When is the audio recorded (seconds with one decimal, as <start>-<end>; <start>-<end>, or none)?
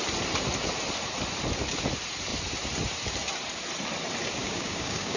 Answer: 0.0-4.4